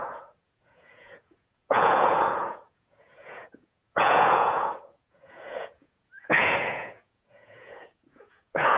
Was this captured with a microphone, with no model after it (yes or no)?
no